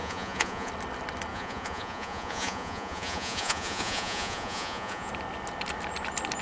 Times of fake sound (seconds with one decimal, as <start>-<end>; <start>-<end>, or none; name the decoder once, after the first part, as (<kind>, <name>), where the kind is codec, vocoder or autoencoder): 0.0-0.7 (vocoder, Vocos); 1.3-5.1